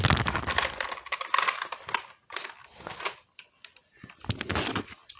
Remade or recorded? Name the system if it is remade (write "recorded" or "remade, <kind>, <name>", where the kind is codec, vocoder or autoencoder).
recorded